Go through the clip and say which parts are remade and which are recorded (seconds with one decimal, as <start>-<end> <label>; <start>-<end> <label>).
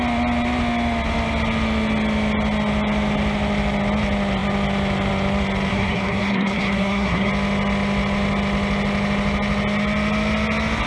0.0-5.7 recorded; 5.7-7.3 remade; 7.3-10.9 recorded